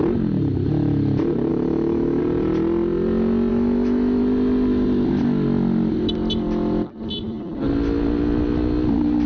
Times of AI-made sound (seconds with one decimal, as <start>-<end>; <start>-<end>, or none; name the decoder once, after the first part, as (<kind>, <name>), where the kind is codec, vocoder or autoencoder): 1.5-2.2 (autoencoder, DAC-VAE); 3.5-4.2